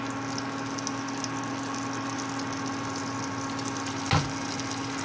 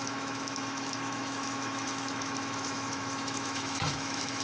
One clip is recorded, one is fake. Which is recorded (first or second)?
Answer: first